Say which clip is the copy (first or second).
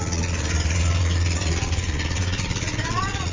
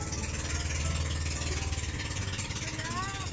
first